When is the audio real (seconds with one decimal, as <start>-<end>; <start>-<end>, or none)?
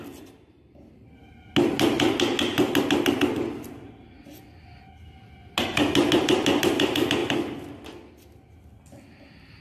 0.0-9.6